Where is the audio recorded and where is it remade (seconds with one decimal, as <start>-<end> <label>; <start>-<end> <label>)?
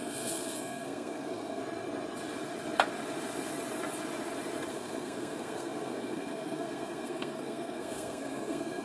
0.0-1.6 remade; 1.6-4.7 recorded; 4.7-8.8 remade